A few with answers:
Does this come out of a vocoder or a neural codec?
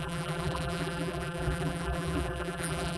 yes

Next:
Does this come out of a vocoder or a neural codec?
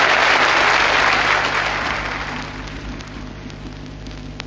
no